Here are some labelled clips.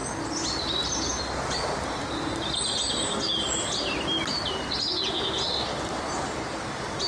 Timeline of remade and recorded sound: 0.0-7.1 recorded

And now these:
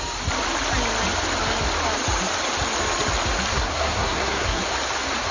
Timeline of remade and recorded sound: 0.0-3.5 recorded; 3.5-4.6 remade; 4.6-5.3 recorded